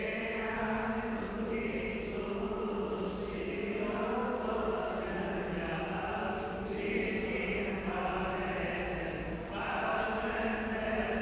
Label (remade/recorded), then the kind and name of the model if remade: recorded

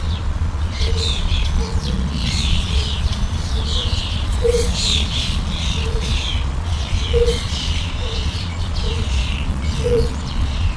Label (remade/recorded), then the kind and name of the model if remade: remade, vocoder, Vocos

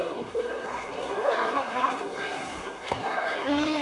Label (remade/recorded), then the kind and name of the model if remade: remade, codec, SNAC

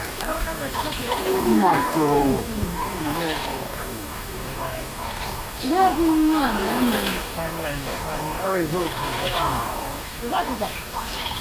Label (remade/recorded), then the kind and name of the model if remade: remade, codec, DAC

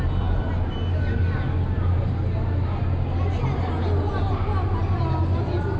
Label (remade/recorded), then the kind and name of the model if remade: recorded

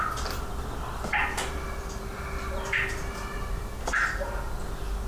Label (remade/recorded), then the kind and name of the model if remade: recorded